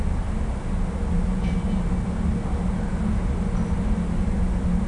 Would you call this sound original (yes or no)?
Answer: yes